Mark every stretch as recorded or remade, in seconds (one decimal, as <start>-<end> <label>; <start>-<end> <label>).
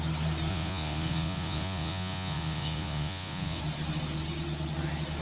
0.0-0.5 recorded; 0.5-3.6 remade; 3.6-5.2 recorded